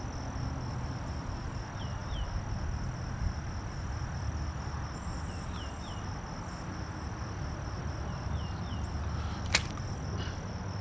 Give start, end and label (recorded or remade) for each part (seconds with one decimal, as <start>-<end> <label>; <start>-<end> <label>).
0.0-10.8 recorded